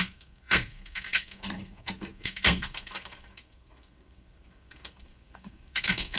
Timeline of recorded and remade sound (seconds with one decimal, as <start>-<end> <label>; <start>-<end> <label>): 0.0-6.2 remade